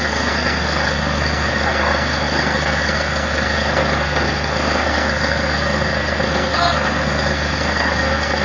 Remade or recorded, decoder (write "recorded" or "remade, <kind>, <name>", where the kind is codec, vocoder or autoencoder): remade, codec, SNAC